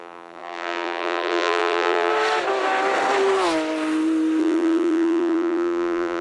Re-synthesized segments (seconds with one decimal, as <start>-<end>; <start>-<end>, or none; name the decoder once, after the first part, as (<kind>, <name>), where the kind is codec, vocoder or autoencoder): 0.0-2.1 (vocoder, BigVGAN v2); 4.4-6.2